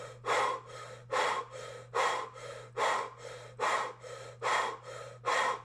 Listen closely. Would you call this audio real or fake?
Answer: real